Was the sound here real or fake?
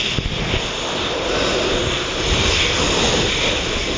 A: real